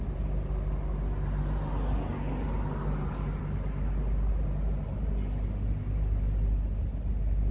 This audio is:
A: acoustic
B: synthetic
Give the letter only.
A